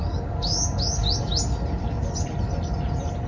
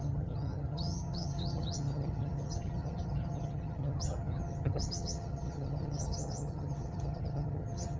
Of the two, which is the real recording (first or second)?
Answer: first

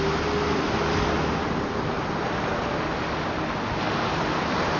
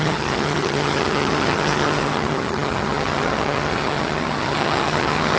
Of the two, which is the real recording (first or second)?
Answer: first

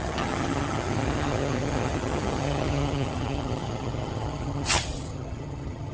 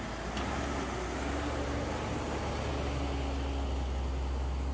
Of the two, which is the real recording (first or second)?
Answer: second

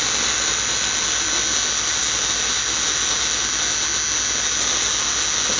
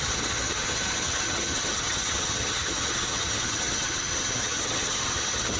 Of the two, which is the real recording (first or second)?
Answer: first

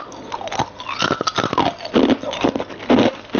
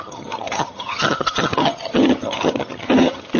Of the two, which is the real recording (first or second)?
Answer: first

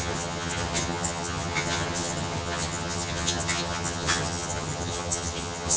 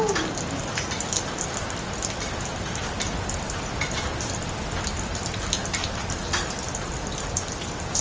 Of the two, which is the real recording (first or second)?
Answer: second